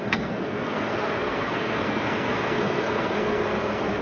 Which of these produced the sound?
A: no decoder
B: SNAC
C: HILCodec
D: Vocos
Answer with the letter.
B